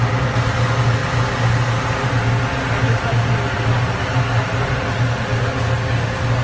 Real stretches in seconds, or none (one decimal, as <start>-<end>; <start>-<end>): 0.0-6.4